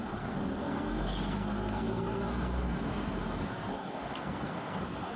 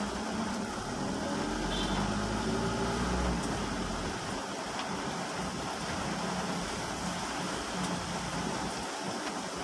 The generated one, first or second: first